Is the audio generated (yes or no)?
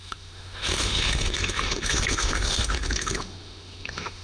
yes